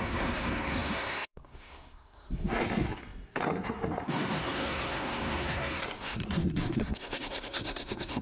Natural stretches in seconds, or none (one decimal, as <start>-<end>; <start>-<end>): none